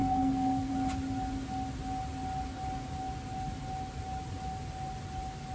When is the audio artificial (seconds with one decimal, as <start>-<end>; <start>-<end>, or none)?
0.0-0.7